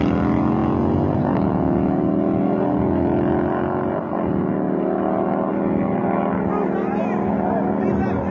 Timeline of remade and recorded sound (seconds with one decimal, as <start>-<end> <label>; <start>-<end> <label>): 0.0-8.3 recorded